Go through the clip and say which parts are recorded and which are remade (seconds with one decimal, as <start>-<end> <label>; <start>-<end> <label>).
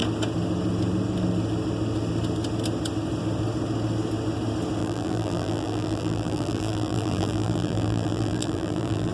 0.0-4.8 recorded; 4.8-9.1 remade